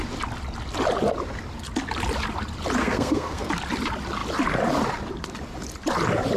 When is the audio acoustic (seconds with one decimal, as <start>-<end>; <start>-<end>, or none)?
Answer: 0.0-2.8; 3.5-6.4